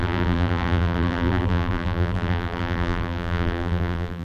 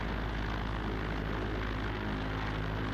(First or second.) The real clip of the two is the second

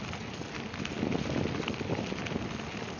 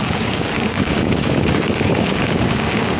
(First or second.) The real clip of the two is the first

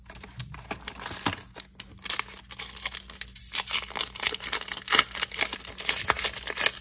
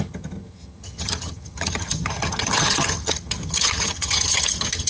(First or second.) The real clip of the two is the first